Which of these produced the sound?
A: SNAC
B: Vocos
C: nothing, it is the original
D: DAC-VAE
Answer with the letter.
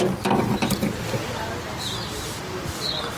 C